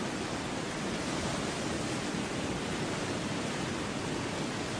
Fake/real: real